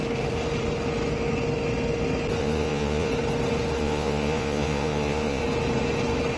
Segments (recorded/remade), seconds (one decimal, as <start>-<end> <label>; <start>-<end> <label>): 0.0-2.4 recorded; 2.4-3.1 remade; 3.1-3.8 recorded; 3.8-5.4 remade; 5.4-6.4 recorded